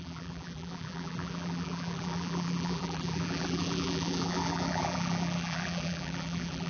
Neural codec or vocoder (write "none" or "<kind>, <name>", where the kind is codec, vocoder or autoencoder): vocoder, BigVGAN v2